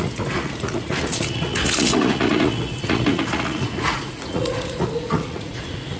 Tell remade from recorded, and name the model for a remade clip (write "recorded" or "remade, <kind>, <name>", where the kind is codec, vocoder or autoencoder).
remade, vocoder, Vocos